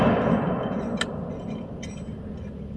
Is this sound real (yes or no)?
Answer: yes